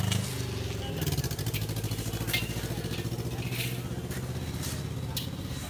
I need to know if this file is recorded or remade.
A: recorded